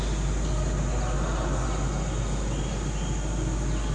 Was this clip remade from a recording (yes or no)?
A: no